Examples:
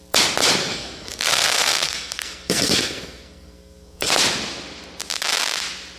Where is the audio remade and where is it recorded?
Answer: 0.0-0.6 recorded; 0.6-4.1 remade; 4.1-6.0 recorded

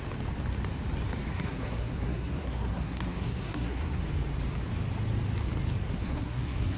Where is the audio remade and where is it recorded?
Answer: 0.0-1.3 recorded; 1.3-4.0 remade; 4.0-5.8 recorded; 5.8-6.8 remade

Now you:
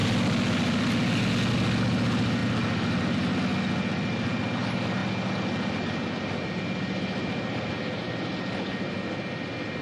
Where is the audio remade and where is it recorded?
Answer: 0.0-9.8 recorded

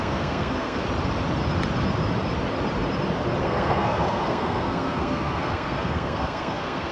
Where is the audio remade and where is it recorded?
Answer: 0.0-0.8 remade; 0.8-3.4 recorded; 3.4-6.9 remade

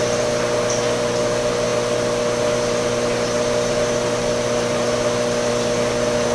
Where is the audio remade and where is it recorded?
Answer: 0.0-6.3 recorded

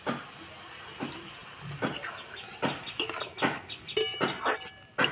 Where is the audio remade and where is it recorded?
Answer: 0.0-5.1 recorded

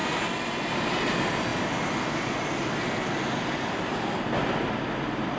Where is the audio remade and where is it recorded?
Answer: 0.0-5.4 recorded

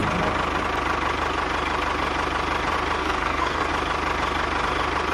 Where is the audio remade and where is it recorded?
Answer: 0.0-3.0 recorded; 3.0-3.7 remade; 3.7-5.1 recorded